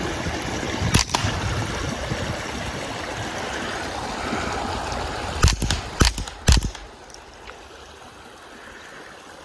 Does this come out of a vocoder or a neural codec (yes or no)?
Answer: no